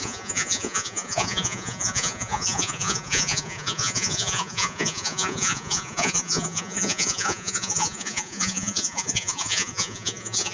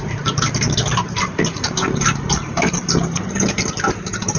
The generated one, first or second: first